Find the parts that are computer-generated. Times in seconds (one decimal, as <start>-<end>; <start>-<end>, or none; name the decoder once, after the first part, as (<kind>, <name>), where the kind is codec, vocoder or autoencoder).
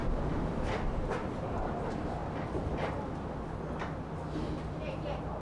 0.9-2.2 (vocoder, BigVGAN v2); 4.8-5.4